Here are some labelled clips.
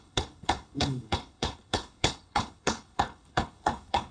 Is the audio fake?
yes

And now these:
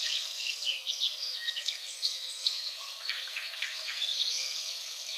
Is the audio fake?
yes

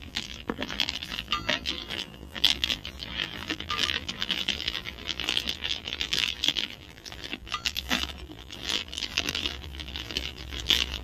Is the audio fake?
yes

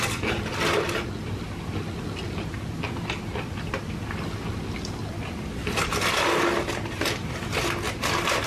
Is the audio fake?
no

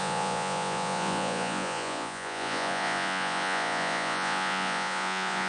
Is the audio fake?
yes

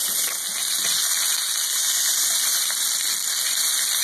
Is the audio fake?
no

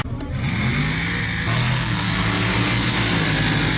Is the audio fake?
no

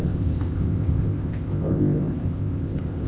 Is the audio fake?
yes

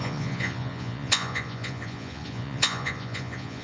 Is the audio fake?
yes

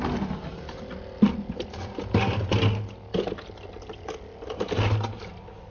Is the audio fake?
no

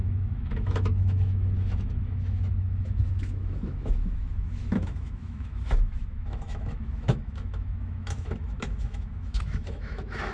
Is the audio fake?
yes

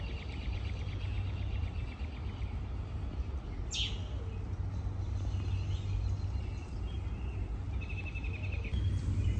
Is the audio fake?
no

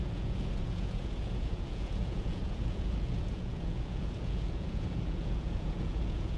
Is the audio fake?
yes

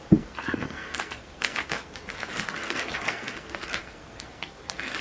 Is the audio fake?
yes